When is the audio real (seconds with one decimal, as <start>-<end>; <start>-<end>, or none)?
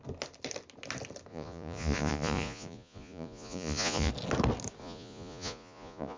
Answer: 0.0-1.3; 4.1-4.8